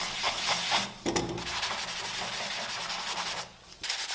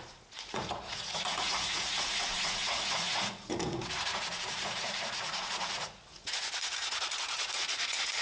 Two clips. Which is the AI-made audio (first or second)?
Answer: second